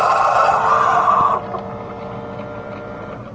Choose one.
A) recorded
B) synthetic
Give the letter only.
A